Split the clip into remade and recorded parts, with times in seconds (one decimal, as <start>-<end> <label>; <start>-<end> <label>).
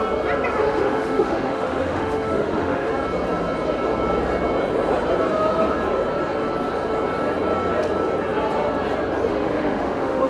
0.0-0.6 recorded; 0.6-2.9 remade; 2.9-9.3 recorded; 9.3-10.3 remade